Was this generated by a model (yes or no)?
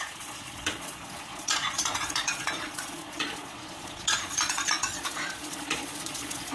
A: yes